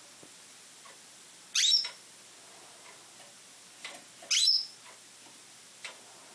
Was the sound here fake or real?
real